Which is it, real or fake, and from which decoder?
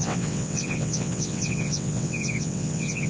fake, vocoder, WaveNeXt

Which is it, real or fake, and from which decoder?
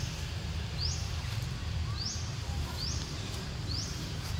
real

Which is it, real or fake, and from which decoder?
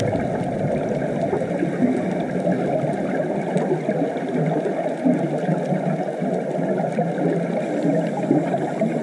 real